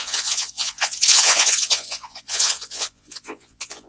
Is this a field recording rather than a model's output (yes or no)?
no